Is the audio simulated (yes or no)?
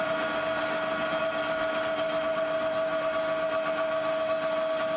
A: no